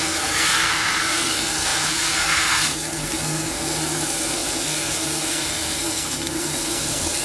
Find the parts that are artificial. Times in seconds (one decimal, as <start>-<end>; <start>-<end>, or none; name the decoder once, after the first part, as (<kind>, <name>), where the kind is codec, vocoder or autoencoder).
0.0-7.2 (codec, SNAC)